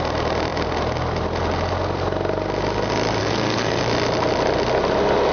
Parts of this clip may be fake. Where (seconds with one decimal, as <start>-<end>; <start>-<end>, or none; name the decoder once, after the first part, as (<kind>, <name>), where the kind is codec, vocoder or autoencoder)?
3.2-3.8 (codec, SNAC)